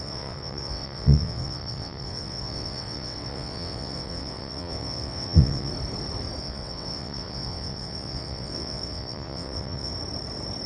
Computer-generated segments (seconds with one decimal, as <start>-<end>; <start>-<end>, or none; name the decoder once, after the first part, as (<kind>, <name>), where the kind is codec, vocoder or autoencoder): 0.0-5.7 (vocoder, WaveNeXt); 6.4-9.9